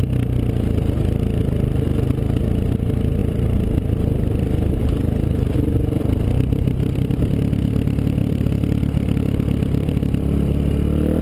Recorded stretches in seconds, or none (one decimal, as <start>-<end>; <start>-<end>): 0.0-3.2; 7.6-8.2; 9.9-11.2